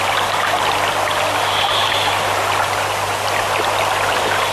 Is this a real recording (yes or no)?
yes